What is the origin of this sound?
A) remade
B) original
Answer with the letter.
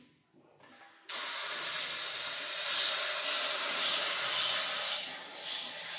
B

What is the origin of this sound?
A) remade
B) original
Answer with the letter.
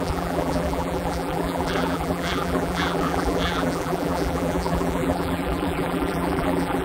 A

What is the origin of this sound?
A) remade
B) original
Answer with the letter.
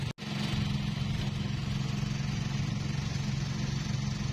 B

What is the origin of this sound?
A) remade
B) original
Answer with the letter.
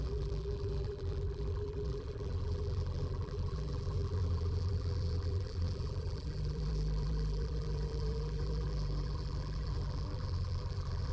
A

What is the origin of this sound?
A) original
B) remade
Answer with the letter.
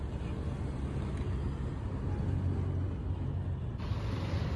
A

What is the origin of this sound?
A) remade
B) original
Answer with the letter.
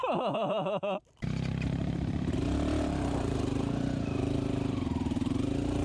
A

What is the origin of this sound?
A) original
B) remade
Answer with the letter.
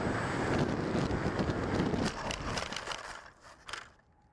A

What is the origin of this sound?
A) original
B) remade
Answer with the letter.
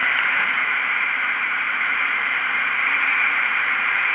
B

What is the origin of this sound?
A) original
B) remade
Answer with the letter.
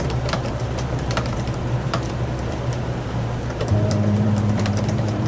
B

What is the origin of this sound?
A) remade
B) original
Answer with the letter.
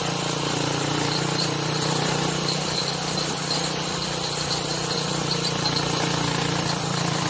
A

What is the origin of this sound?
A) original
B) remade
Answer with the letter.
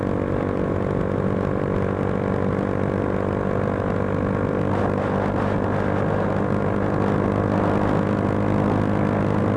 A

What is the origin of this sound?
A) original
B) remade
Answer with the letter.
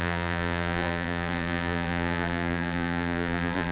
B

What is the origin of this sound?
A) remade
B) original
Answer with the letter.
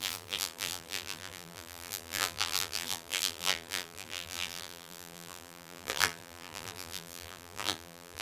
A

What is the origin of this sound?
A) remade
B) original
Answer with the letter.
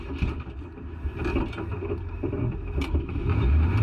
A